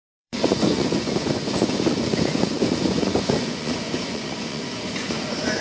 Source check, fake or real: fake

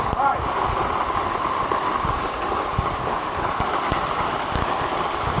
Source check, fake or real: real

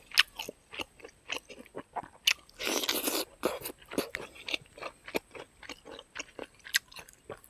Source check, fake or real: real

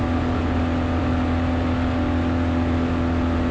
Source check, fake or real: real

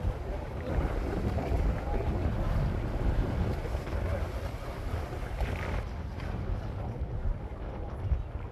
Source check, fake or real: real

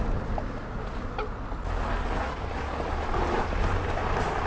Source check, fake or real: real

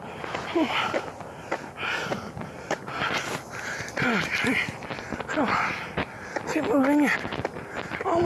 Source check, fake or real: real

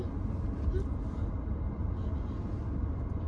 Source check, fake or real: real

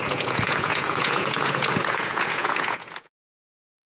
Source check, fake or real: fake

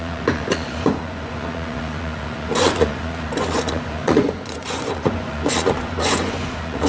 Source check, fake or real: fake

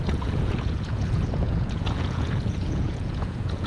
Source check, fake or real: fake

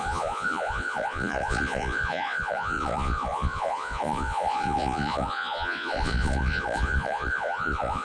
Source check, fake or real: fake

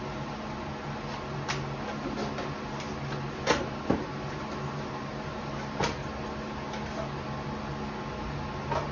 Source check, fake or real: real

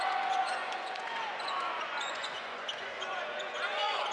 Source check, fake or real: fake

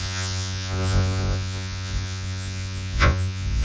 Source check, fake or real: fake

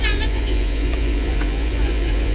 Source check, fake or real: fake